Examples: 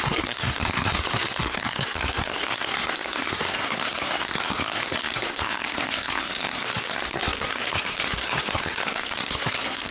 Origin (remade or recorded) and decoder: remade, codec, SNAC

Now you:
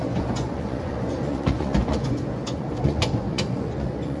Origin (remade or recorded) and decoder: remade, vocoder, Vocos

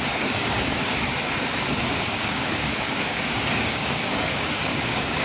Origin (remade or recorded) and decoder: remade, codec, DAC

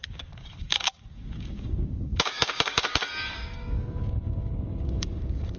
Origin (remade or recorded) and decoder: remade, codec, DAC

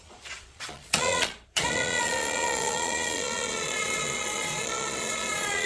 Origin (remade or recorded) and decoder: remade, vocoder, Vocos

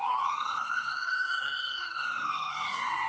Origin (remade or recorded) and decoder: remade, codec, SNAC